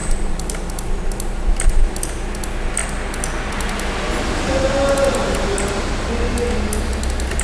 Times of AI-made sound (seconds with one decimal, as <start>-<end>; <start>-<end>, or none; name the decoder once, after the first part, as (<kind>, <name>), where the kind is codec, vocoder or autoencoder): none